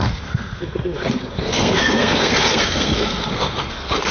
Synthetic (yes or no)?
yes